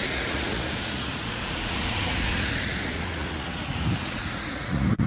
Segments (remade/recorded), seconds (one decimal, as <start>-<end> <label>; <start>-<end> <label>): 0.0-5.1 remade